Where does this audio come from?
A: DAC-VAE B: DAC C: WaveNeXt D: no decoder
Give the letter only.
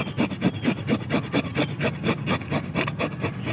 D